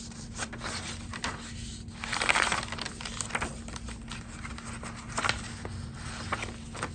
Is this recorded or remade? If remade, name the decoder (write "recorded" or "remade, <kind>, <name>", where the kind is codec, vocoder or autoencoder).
recorded